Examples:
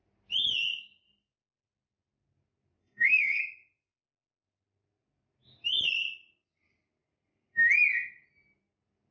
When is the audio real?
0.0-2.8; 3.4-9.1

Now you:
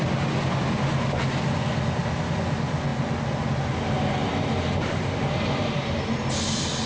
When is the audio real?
0.0-6.9

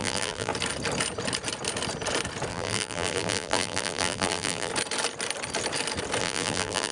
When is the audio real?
0.5-2.5; 4.7-6.2

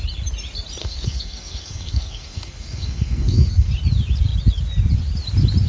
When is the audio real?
0.0-0.8; 3.7-5.7

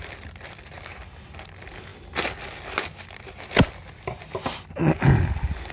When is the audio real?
0.0-5.7

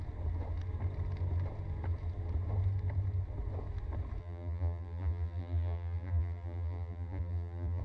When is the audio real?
0.0-4.2